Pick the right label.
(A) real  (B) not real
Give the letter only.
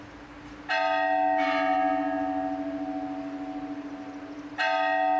A